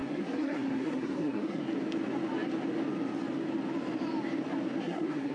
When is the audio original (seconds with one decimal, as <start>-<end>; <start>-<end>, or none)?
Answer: 1.6-4.8